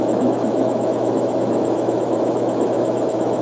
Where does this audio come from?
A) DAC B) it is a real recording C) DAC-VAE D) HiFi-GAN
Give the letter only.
C